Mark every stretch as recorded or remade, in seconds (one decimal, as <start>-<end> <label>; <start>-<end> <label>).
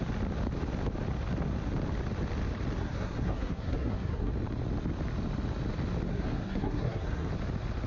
0.0-2.8 recorded; 2.8-4.3 remade; 4.3-6.1 recorded; 6.1-7.3 remade; 7.3-7.9 recorded